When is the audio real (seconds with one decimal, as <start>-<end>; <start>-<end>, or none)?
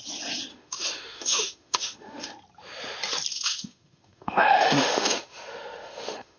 0.0-0.5; 2.3-3.3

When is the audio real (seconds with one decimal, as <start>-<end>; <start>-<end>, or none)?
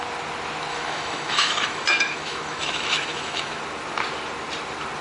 0.0-0.7; 3.6-5.0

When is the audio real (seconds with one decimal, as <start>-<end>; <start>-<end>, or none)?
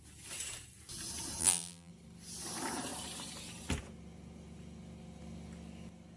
0.0-1.4; 1.9-6.2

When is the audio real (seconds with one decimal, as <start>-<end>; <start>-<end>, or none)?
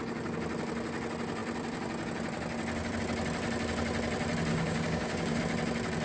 0.0-4.5; 5.4-6.0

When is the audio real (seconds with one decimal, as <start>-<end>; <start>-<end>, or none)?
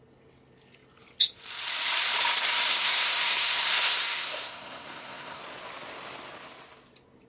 0.0-2.7; 5.4-7.3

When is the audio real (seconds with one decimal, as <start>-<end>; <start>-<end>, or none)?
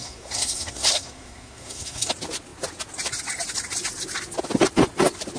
2.1-5.4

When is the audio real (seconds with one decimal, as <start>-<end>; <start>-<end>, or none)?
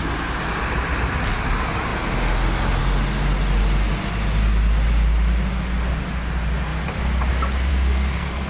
0.0-7.7